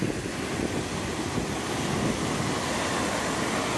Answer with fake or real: real